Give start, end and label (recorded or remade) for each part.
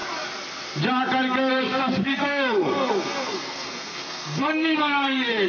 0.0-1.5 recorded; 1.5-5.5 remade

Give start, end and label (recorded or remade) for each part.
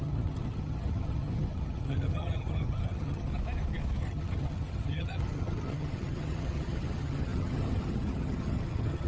0.0-3.3 remade; 3.3-4.0 recorded; 4.0-9.1 remade